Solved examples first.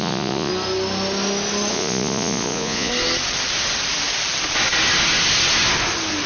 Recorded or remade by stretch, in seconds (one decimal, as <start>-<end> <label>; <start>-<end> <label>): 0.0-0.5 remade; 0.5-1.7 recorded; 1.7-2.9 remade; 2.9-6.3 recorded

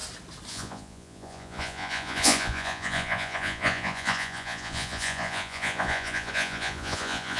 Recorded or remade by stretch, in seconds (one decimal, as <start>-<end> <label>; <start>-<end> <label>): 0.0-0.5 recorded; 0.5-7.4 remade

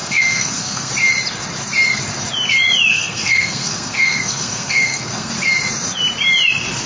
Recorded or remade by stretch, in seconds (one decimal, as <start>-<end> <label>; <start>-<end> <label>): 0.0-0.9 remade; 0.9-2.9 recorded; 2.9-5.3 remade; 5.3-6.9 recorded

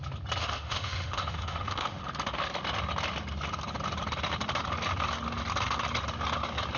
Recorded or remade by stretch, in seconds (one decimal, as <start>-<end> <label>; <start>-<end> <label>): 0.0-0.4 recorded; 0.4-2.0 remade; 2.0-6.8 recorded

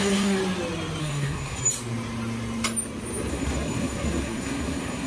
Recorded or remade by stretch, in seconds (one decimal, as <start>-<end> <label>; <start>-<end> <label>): 0.0-0.4 remade; 0.4-1.0 recorded; 1.0-1.6 remade; 1.6-3.3 recorded; 3.3-5.1 remade